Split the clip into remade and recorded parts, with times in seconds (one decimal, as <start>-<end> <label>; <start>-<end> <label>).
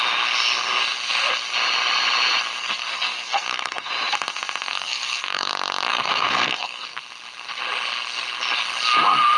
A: 0.0-2.6 recorded; 2.6-3.9 remade; 3.9-4.7 recorded; 4.7-5.5 remade; 5.5-5.9 recorded; 5.9-7.0 remade; 7.0-9.4 recorded